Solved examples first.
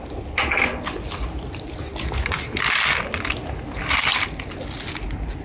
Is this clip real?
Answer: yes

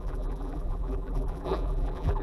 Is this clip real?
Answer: no